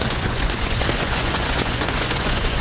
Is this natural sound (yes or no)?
no